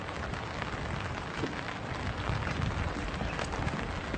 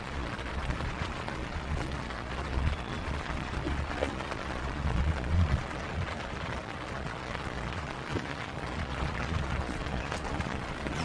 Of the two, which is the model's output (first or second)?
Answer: second